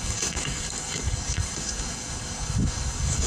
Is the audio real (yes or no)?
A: no